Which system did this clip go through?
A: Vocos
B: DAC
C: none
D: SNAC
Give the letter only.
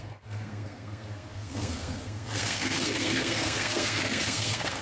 D